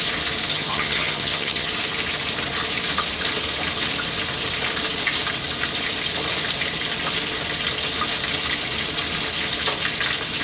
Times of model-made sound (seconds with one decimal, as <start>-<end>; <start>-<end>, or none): 0.5-1.7